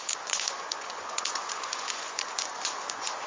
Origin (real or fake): fake